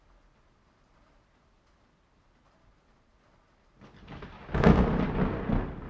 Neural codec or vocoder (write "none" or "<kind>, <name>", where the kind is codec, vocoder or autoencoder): none